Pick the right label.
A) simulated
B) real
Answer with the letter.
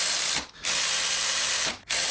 B